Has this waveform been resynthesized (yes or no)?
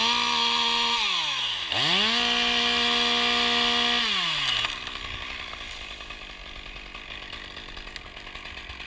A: no